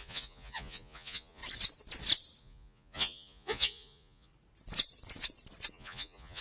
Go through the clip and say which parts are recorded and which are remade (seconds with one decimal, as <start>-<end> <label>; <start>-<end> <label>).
0.0-1.4 remade; 1.4-2.4 recorded; 2.4-4.3 remade; 4.3-5.7 recorded; 5.7-6.4 remade

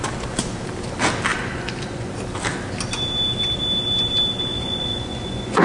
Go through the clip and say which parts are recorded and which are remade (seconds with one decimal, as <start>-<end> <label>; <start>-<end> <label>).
0.0-1.3 recorded; 1.3-2.1 remade; 2.1-4.5 recorded; 4.5-5.6 remade